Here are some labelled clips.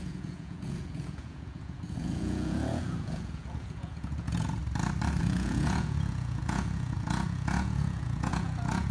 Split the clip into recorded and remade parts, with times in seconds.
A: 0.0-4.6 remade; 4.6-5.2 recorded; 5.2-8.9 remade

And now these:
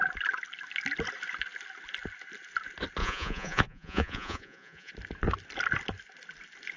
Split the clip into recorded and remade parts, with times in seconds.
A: 0.0-3.0 recorded; 3.0-4.9 remade; 4.9-6.8 recorded

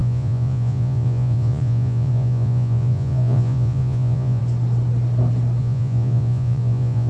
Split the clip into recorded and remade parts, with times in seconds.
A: 0.0-4.4 remade; 4.4-5.6 recorded; 5.6-7.1 remade

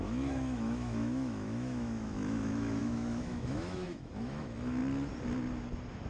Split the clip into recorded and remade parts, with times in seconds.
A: 0.0-4.8 remade; 4.8-6.1 recorded

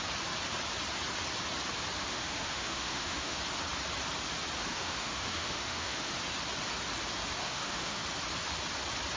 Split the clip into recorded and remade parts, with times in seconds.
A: 0.0-2.1 recorded; 2.1-3.4 remade; 3.4-4.7 recorded; 4.7-6.1 remade; 6.1-7.4 recorded; 7.4-8.0 remade; 8.0-9.2 recorded